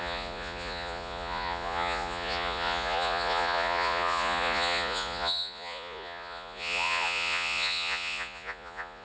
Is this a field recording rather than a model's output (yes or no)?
no